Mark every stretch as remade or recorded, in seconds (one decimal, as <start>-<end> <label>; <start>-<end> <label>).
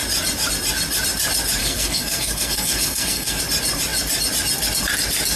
0.0-1.6 recorded; 1.6-3.4 remade; 3.4-5.4 recorded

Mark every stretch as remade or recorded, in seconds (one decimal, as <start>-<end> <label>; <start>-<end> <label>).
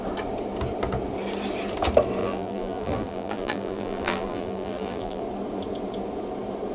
0.0-2.2 recorded; 2.2-5.2 remade; 5.2-6.7 recorded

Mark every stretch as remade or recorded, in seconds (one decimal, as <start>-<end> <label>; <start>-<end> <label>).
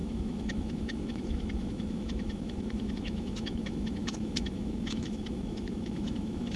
0.0-6.6 remade